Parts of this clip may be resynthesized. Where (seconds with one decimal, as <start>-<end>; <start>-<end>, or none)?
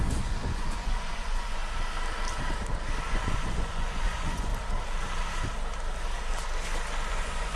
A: 0.0-1.6; 3.1-4.5; 7.1-7.6